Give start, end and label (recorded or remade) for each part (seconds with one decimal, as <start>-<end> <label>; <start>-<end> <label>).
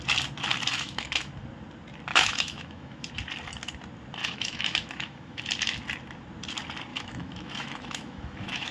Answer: 0.0-0.7 recorded; 0.7-1.3 remade; 1.3-2.1 recorded; 2.1-3.1 remade; 3.1-4.2 recorded; 4.2-5.4 remade; 5.4-6.9 recorded; 6.9-8.7 remade